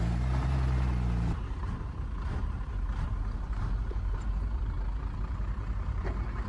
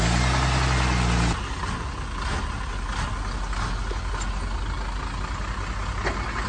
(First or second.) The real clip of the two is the second